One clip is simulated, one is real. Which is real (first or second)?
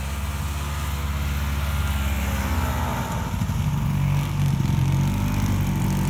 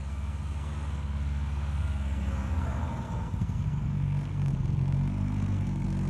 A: first